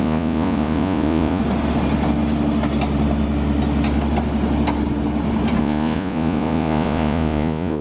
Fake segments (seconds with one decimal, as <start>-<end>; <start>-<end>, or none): 0.0-1.4; 5.6-7.8